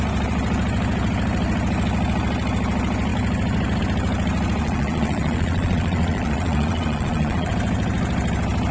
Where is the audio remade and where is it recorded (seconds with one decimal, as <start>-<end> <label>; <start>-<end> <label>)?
0.0-4.6 recorded; 4.6-7.5 remade; 7.5-8.7 recorded